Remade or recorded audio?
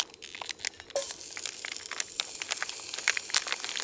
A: recorded